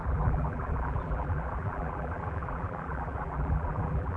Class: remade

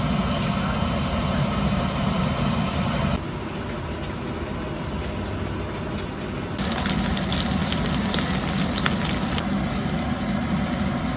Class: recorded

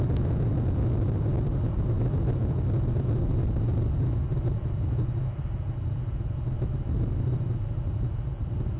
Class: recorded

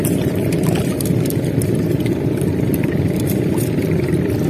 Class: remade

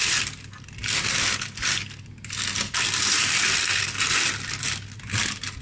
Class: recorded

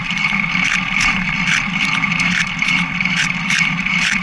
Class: remade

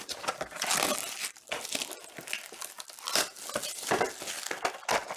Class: recorded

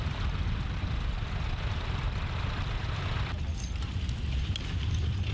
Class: recorded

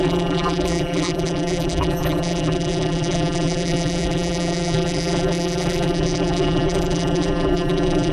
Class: remade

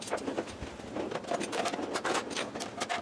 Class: recorded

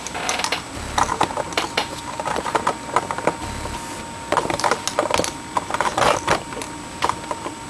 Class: recorded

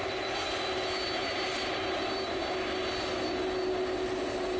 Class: recorded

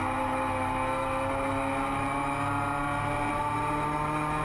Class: recorded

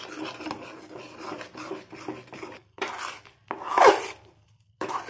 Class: remade